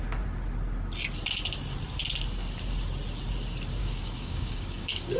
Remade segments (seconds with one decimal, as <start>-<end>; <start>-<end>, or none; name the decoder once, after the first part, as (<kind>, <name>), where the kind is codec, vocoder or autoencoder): 3.8-5.2 (codec, DAC)